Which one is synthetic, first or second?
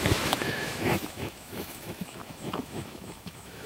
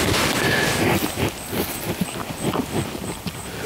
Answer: first